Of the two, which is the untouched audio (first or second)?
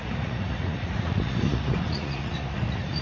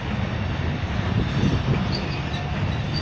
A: second